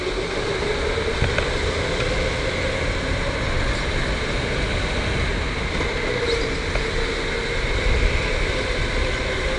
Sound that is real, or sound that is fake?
real